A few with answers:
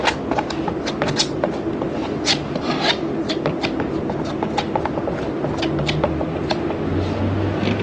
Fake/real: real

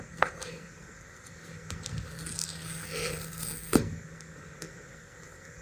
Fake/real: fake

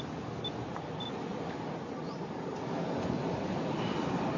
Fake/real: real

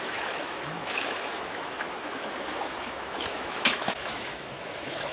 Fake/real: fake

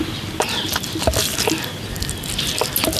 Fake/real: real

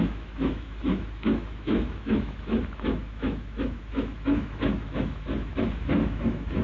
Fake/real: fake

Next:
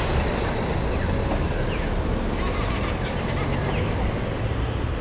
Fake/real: real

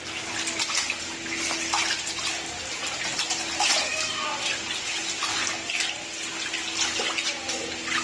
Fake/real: real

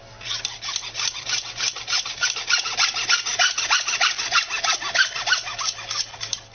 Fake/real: real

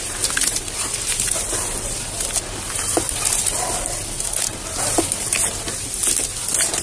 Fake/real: real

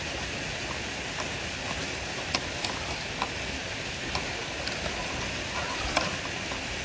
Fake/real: real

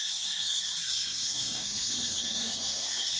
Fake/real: fake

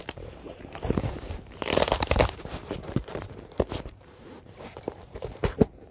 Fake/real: fake